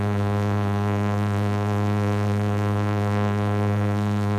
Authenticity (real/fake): fake